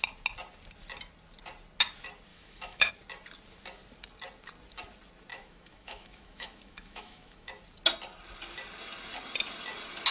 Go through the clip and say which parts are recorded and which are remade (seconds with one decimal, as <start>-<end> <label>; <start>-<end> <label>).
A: 0.0-2.3 recorded; 2.3-2.9 remade; 2.9-5.3 recorded; 5.3-7.5 remade; 7.5-10.1 recorded